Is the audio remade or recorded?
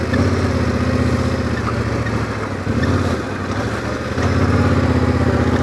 recorded